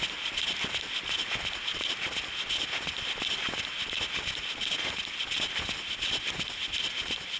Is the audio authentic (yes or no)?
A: yes